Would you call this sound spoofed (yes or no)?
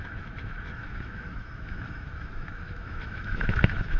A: yes